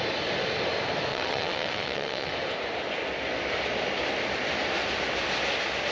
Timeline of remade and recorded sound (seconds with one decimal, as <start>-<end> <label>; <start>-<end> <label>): 0.0-1.1 recorded; 1.1-2.3 remade; 2.3-5.9 recorded